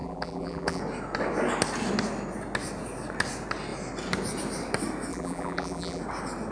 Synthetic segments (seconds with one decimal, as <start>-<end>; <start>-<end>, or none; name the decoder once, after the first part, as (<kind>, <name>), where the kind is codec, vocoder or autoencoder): 0.0-0.8 (vocoder, BigVGAN v2); 5.1-6.0

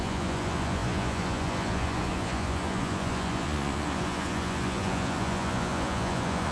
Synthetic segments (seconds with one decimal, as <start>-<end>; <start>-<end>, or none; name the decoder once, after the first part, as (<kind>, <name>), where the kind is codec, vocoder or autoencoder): 0.0-6.5 (vocoder, Vocos)

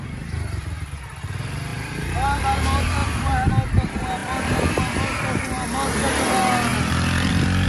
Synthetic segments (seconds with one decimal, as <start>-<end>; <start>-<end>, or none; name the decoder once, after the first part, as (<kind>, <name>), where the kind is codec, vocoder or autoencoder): 1.7-2.4 (vocoder, BigVGAN v2); 3.0-3.5; 6.7-7.3

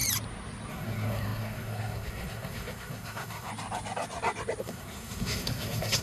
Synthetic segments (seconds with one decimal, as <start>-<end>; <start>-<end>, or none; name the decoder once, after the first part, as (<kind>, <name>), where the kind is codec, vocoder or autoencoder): 0.7-3.5 (codec, SNAC); 4.6-6.0

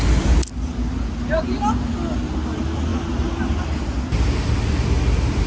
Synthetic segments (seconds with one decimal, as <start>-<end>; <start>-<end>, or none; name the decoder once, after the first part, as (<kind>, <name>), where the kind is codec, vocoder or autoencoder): none

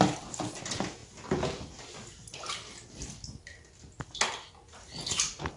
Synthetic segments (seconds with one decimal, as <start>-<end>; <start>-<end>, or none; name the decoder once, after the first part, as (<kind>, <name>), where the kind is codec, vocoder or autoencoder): none

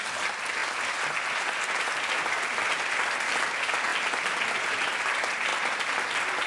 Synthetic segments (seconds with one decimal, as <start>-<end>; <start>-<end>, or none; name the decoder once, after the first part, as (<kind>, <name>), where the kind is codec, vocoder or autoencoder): 0.0-3.9 (vocoder, BigVGAN v2); 4.7-6.5

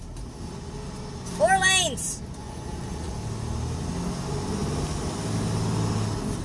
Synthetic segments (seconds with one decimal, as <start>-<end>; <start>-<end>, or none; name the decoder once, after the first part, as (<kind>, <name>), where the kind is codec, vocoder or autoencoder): 2.4-3.1 (vocoder, Vocos)